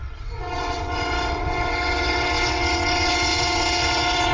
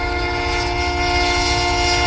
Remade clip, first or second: first